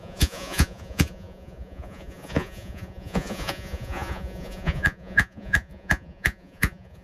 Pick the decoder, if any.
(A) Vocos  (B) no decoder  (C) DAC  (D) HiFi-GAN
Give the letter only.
A